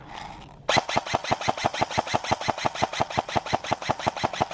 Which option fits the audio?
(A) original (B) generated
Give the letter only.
A